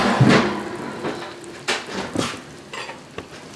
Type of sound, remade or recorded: recorded